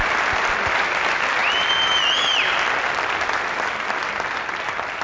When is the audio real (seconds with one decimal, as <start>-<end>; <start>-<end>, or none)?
0.0-5.0